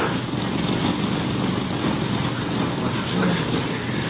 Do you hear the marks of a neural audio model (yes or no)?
no